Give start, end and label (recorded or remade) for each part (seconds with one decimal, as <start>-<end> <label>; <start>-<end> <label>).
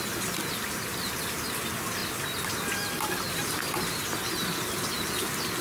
0.0-5.6 recorded